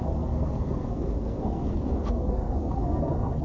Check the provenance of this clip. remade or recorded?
remade